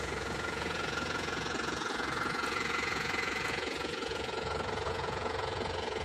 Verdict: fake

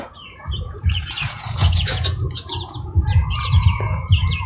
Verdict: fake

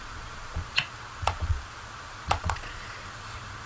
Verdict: fake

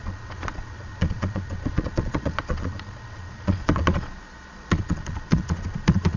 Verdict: fake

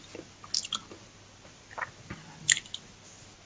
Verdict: real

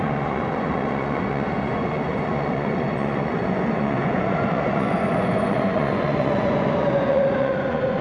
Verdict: fake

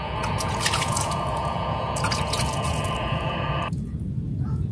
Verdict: fake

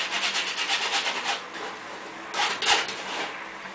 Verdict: real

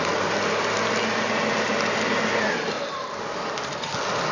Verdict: real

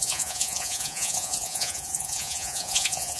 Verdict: fake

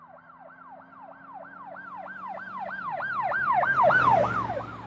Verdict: real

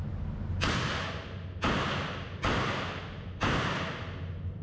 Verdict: real